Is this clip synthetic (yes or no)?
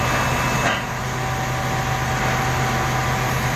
no